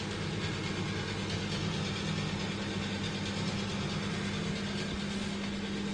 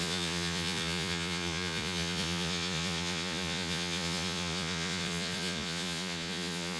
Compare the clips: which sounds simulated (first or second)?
second